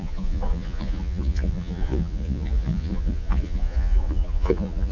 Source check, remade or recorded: remade